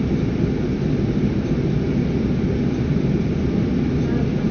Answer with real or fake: real